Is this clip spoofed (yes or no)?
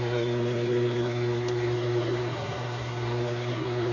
yes